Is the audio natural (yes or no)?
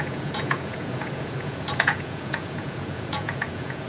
no